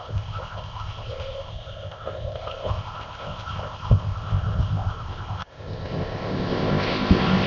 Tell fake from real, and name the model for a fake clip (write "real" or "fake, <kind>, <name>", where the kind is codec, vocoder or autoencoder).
fake, codec, ZipCodec